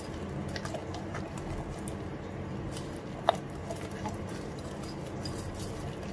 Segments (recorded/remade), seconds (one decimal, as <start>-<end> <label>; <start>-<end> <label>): 0.0-6.1 recorded